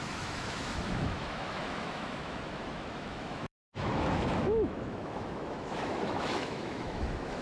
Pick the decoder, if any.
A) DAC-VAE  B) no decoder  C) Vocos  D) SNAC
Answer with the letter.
A